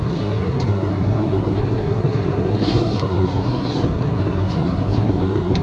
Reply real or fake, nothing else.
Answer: fake